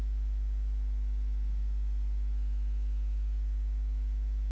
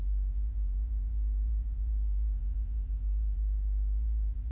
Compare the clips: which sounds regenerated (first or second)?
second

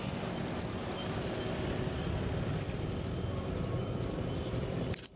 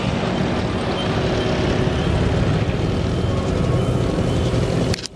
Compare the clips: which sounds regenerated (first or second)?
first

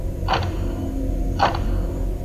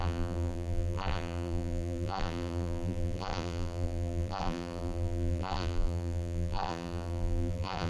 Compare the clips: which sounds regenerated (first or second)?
second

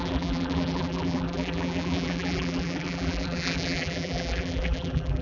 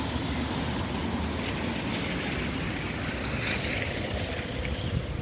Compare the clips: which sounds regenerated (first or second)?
first